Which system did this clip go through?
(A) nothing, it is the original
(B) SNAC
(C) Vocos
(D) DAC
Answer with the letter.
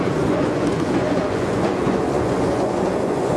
C